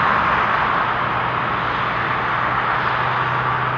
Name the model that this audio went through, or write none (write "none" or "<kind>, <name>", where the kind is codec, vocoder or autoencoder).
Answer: none